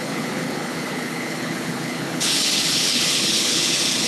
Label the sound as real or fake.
fake